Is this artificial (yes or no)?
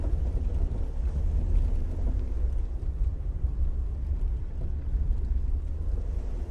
no